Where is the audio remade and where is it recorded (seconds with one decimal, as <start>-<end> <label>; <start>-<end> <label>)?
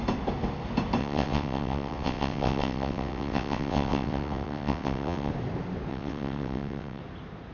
0.0-1.0 recorded; 1.0-5.3 remade; 5.3-5.9 recorded; 5.9-7.0 remade; 7.0-7.5 recorded